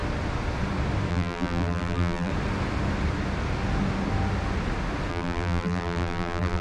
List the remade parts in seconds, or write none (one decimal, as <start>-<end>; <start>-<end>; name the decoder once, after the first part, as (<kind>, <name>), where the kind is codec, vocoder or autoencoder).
1.1-2.3 (vocoder, BigVGAN v2); 5.1-6.6